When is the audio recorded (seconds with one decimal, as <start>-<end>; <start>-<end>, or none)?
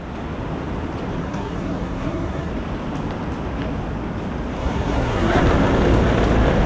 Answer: 0.0-1.2; 2.5-4.6; 5.4-6.7